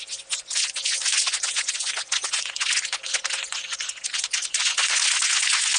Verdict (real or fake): fake